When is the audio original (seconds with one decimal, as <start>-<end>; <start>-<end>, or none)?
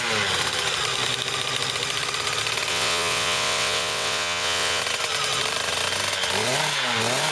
0.0-2.7; 4.8-7.3